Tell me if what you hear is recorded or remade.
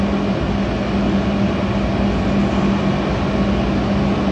recorded